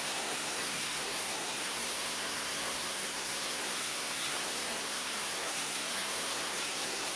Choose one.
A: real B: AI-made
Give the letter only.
B